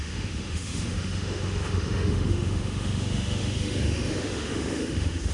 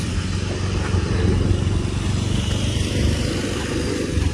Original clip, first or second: second